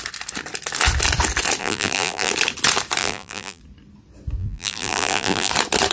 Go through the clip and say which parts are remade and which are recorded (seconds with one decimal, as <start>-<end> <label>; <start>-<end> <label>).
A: 0.0-1.6 recorded; 1.6-2.3 remade; 2.3-3.0 recorded; 3.0-3.6 remade; 3.6-4.4 recorded; 4.4-5.5 remade; 5.5-5.9 recorded